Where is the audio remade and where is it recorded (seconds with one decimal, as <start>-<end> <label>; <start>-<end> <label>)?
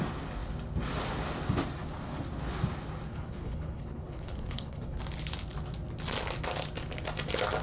0.0-3.1 recorded; 3.1-5.0 remade; 5.0-7.6 recorded